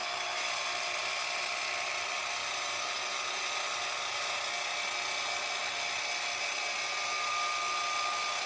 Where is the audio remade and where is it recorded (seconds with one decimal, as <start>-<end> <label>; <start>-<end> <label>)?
0.0-0.5 remade; 0.5-8.5 recorded